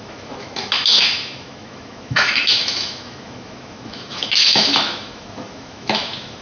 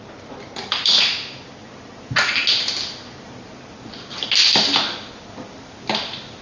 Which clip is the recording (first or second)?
second